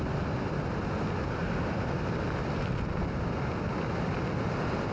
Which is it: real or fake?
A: real